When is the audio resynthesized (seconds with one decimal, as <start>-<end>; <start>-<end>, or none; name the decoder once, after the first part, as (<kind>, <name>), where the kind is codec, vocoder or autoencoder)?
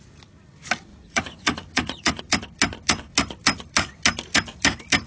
0.9-2.2 (vocoder, Vocos)